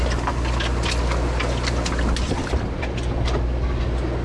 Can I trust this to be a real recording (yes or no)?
yes